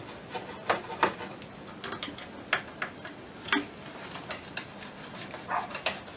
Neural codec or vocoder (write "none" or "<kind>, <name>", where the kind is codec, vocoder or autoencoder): none